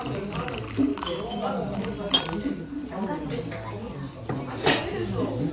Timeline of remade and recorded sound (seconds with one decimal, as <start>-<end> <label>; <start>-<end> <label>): 0.0-5.5 recorded